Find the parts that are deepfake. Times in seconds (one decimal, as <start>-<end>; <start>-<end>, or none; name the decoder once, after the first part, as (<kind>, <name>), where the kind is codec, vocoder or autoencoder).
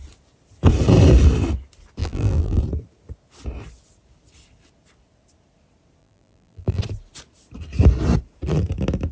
2.0-2.6 (vocoder, BigVGAN v2); 6.0-6.8